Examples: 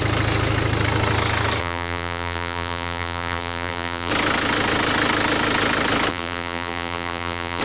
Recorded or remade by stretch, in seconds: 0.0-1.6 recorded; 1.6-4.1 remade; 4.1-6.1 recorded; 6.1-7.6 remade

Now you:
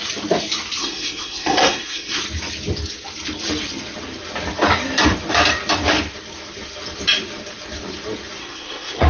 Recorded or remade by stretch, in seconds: 0.0-0.8 recorded; 0.8-2.2 remade; 2.2-8.4 recorded; 8.4-9.1 remade

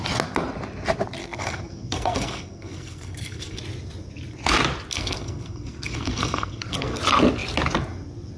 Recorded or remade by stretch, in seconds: 0.0-1.2 recorded; 1.2-3.6 remade; 3.6-4.9 recorded; 4.9-7.0 remade; 7.0-8.4 recorded

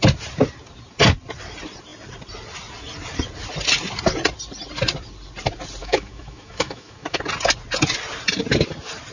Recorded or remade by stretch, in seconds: 0.0-5.8 recorded; 5.8-7.2 remade; 7.2-9.1 recorded